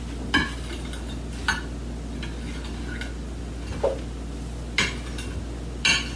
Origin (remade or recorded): recorded